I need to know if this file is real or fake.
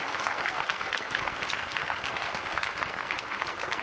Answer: fake